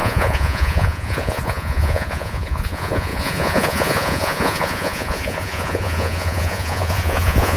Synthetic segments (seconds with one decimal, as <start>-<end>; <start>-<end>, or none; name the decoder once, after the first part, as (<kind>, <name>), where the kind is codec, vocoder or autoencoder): 0.0-7.6 (vocoder, Vocos)